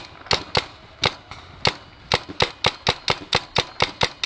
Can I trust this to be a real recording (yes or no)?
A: yes